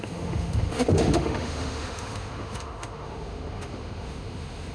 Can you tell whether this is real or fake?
fake